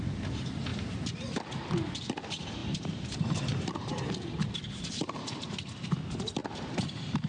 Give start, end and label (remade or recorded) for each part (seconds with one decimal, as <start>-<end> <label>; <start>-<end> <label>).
0.0-0.7 recorded; 0.7-1.4 remade; 1.4-2.6 recorded; 2.6-3.9 remade; 3.9-6.4 recorded; 6.4-7.3 remade

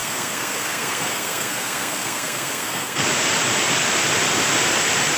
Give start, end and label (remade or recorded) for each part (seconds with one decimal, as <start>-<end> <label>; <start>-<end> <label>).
0.0-3.0 remade; 3.0-5.2 recorded

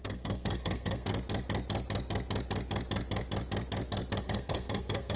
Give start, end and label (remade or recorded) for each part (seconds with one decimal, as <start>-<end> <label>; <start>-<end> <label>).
0.0-1.1 remade; 1.1-4.2 recorded; 4.2-5.2 remade

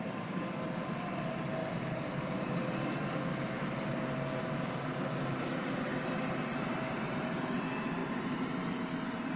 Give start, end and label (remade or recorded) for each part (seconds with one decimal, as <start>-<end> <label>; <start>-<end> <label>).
0.0-1.6 recorded; 1.6-2.7 remade; 2.7-6.5 recorded; 6.5-7.6 remade; 7.6-8.0 recorded; 8.0-8.5 remade; 8.5-9.4 recorded

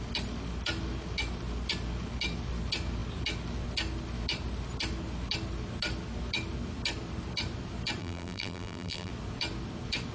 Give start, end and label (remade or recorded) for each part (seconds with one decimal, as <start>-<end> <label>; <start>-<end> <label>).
0.0-8.0 recorded; 8.0-9.1 remade; 9.1-10.1 recorded

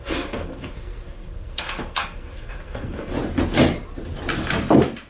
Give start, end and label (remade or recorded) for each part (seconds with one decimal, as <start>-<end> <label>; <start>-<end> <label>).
0.0-3.1 remade; 3.1-5.1 recorded

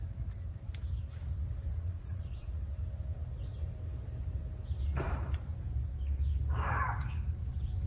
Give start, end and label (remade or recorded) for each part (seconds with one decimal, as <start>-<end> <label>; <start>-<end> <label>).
0.0-1.7 recorded; 1.7-2.6 remade; 2.6-7.9 recorded